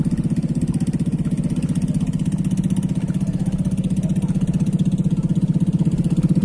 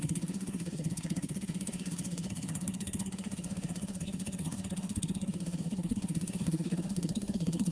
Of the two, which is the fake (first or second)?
second